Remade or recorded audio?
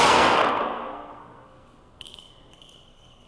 remade